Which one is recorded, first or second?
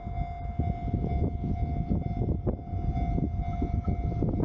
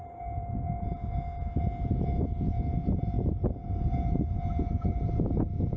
first